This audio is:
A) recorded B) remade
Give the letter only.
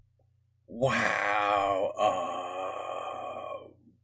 A